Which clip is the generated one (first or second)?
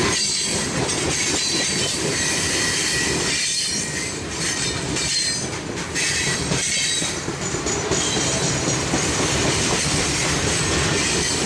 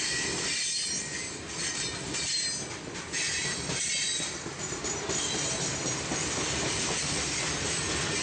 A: first